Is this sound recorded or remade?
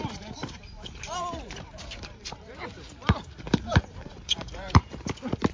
remade